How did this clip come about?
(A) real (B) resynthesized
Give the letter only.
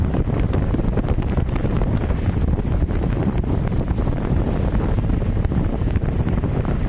B